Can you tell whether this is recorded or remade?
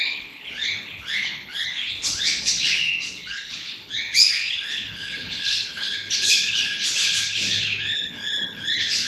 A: remade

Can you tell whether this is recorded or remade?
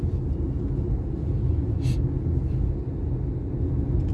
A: recorded